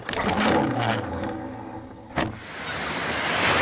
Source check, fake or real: real